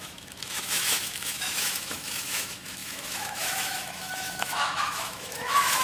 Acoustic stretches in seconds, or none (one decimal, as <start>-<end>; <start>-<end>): none